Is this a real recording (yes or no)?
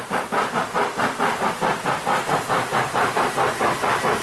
no